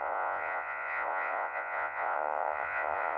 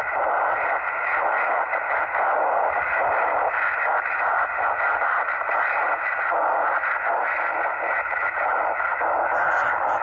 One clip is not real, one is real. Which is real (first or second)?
second